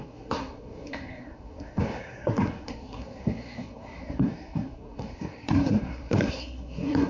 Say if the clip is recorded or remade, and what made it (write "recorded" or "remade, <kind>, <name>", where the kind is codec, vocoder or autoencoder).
remade, codec, SNAC